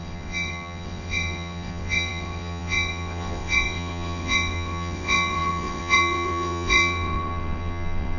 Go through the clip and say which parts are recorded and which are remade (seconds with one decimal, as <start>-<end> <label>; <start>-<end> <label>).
0.0-8.2 remade

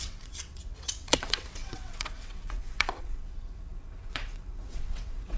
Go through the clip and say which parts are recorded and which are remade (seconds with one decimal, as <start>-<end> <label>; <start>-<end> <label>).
0.0-5.4 remade